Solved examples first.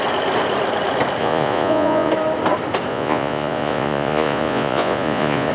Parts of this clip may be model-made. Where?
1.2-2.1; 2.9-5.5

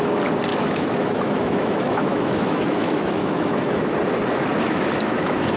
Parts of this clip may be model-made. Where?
0.5-3.9; 4.5-5.6